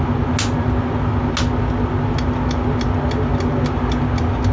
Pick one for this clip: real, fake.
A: real